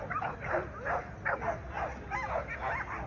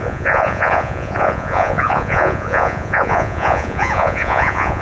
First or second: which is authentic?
first